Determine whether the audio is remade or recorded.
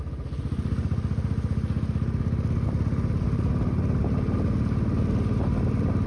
recorded